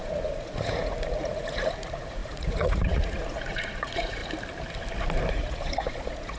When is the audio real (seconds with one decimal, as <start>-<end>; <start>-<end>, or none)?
4.2-5.3